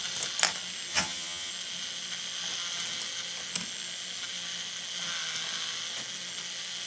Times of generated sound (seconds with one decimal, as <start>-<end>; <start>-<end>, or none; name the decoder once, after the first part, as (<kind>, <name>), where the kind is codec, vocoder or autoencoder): 0.9-1.5 (vocoder, HiFi-GAN)